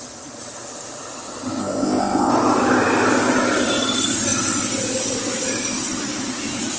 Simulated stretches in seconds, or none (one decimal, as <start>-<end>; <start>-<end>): 1.6-2.3